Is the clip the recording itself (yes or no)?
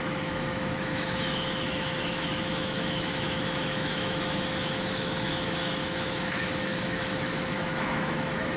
no